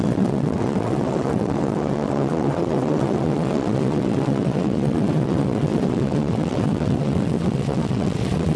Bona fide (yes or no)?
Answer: no